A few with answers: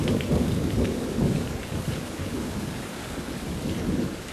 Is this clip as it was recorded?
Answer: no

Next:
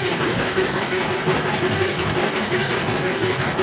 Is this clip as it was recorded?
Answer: no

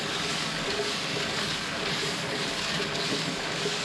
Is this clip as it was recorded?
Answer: no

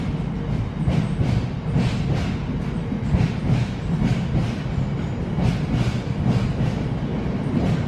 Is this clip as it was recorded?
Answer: yes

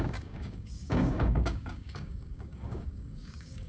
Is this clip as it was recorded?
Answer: no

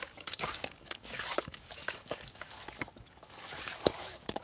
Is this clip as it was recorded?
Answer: no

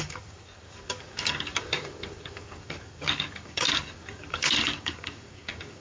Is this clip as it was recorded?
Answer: no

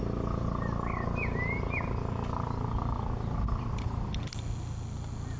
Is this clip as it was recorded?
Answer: yes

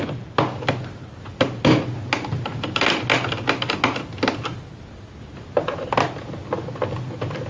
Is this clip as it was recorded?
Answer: yes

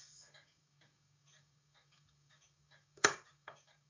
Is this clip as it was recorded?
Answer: no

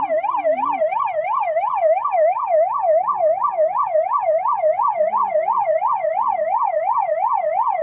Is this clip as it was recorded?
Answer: yes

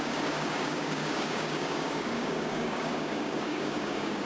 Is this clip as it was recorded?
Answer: no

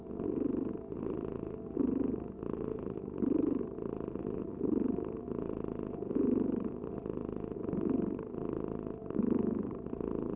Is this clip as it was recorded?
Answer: yes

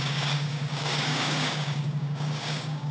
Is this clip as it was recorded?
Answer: no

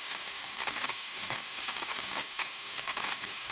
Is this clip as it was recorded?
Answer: no